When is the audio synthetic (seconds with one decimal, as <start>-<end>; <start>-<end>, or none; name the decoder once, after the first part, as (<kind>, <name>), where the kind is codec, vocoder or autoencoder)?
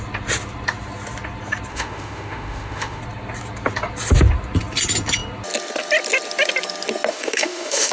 1.7-3.0 (autoencoder, DAC-VAE); 7.1-7.9